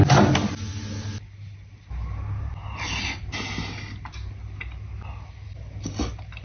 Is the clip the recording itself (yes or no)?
yes